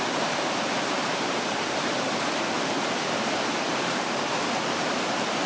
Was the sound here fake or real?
fake